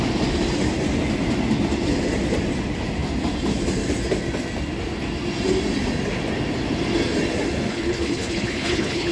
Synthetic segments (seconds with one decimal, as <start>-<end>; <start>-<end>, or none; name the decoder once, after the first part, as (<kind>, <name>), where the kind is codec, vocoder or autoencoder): 7.7-9.1 (codec, HILCodec)